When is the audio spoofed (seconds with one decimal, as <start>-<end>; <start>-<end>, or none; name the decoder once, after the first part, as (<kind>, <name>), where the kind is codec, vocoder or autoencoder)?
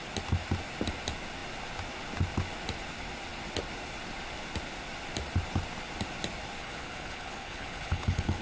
6.6-8.4 (codec, HILCodec)